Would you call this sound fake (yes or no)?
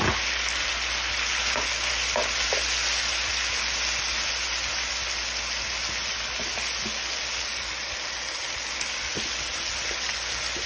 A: no